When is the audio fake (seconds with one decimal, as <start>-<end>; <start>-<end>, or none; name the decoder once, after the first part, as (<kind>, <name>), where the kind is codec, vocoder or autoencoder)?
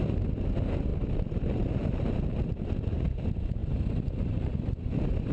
none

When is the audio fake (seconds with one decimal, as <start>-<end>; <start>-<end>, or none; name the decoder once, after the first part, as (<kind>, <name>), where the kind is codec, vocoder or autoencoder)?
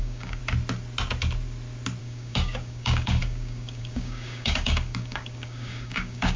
0.0-0.4 (codec, DAC); 2.0-6.4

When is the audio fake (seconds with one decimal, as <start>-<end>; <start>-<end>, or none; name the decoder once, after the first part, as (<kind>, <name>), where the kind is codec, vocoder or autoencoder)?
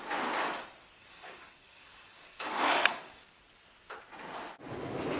1.0-3.4 (codec, DAC)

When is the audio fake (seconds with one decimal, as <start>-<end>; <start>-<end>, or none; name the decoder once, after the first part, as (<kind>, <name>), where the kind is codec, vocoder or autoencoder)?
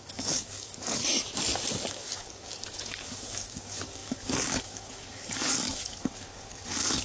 0.0-1.0 (codec, DAC); 1.9-7.0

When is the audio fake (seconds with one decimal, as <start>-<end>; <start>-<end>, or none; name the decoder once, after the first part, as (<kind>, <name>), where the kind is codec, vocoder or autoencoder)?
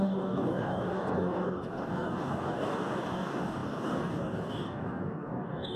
0.0-5.8 (codec, DAC)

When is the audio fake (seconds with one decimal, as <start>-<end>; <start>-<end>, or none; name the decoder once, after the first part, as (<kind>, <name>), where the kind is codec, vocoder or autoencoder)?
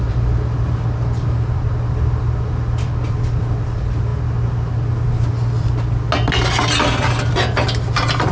none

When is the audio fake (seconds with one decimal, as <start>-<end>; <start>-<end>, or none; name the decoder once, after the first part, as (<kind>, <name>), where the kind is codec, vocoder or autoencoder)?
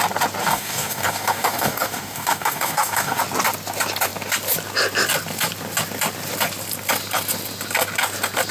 0.4-3.2 (codec, DAC)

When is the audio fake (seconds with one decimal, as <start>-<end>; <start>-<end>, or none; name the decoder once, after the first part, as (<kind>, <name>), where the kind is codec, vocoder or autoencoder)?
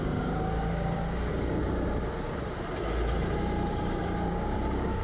0.0-1.3 (codec, DAC); 3.7-5.0